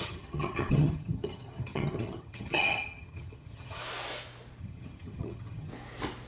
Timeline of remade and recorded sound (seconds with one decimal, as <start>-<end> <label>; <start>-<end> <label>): 0.0-3.8 remade; 3.8-4.6 recorded; 4.6-5.7 remade; 5.7-6.3 recorded